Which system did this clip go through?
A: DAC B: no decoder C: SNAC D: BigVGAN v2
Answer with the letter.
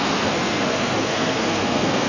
C